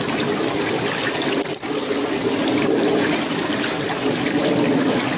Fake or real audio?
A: real